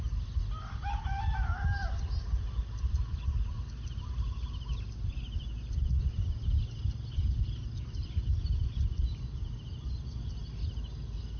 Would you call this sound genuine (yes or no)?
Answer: yes